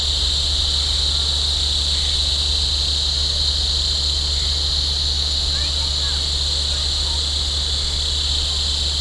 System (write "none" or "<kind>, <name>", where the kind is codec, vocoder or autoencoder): none